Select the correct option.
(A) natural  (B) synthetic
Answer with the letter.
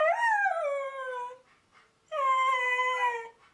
A